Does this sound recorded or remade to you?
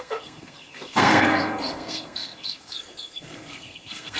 remade